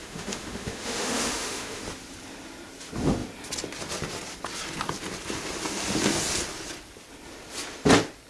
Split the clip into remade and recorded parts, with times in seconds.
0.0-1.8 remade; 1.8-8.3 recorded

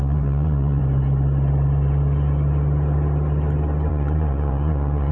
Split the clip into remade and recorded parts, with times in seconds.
0.0-0.8 remade; 0.8-3.9 recorded; 3.9-5.1 remade

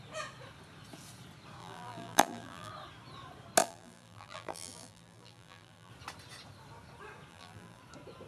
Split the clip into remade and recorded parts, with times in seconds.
0.0-1.6 recorded; 1.6-2.7 remade; 2.7-3.6 recorded; 3.6-5.9 remade; 5.9-7.3 recorded; 7.3-7.8 remade; 7.8-8.3 recorded

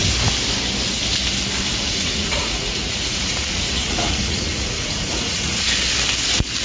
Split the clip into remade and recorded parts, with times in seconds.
0.0-1.7 recorded; 1.7-5.7 remade; 5.7-6.6 recorded

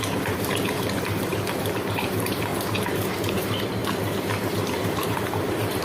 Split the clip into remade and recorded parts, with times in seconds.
0.0-2.5 remade; 2.5-3.1 recorded; 3.1-3.8 remade; 3.8-4.9 recorded; 4.9-5.8 remade

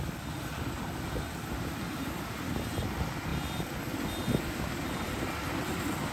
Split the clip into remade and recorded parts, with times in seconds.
0.0-6.1 recorded